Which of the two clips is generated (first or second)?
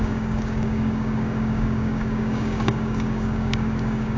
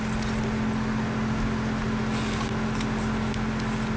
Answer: first